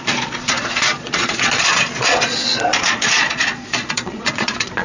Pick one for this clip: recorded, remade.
remade